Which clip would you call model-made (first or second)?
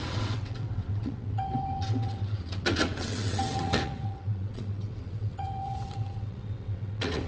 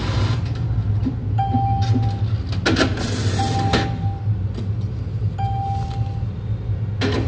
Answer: first